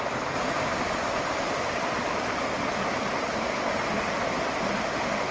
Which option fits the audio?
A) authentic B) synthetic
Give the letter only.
A